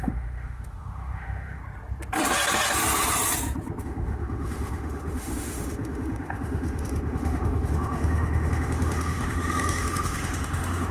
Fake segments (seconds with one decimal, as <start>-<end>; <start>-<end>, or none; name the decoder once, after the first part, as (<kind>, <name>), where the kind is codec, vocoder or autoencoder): 0.0-1.6 (autoencoder, DAC-VAE); 3.8-10.9